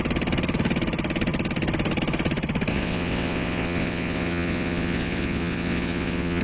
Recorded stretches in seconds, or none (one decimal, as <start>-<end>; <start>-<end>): 0.0-2.7